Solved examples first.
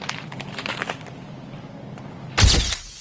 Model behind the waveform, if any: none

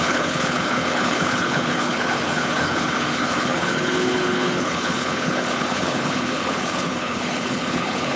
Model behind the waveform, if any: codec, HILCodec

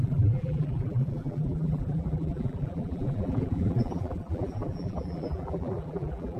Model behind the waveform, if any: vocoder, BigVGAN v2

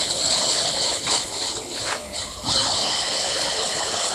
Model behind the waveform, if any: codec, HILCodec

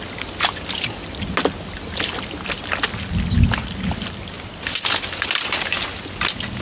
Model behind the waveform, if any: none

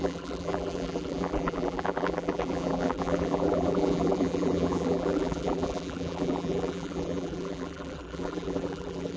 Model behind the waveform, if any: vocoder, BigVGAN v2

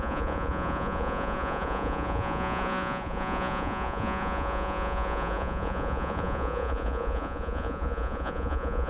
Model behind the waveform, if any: vocoder, Vocos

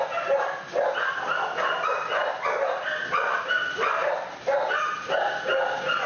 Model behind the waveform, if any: none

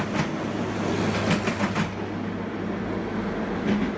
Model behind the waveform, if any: none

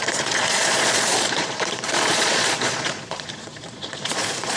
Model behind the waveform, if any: vocoder, Vocos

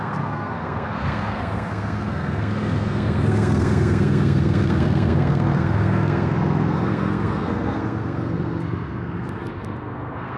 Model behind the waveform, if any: codec, SNAC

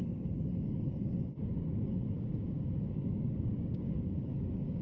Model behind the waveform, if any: codec, DAC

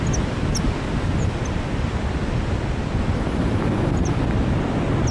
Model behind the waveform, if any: none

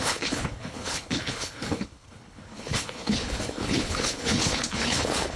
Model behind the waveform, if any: codec, HILCodec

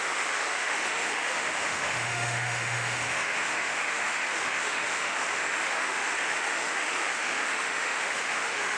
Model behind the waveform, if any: autoencoder, DAC-VAE